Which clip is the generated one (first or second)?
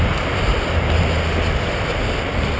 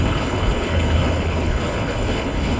second